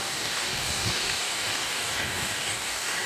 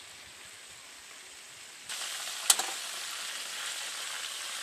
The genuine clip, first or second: second